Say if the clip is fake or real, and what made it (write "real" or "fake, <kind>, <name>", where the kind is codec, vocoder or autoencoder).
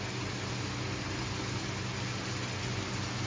real